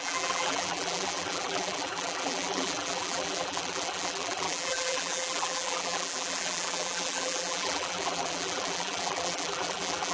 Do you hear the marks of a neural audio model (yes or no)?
yes